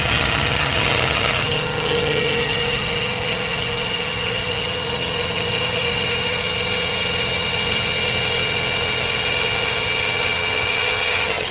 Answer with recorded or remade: remade